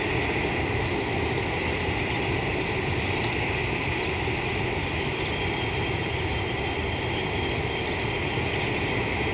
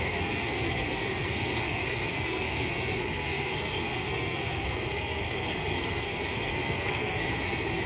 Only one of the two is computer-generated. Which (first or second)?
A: second